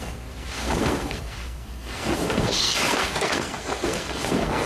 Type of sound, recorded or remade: remade